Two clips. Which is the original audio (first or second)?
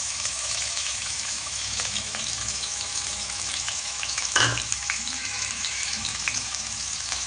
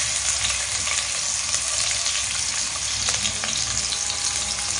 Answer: second